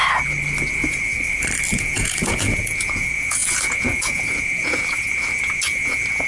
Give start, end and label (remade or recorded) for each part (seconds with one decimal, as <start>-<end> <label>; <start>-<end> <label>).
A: 0.0-0.7 recorded; 0.7-1.1 remade; 1.1-1.7 recorded; 1.7-6.3 remade